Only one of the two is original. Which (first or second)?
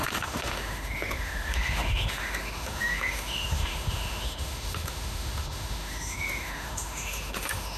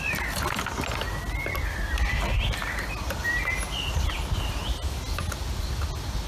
second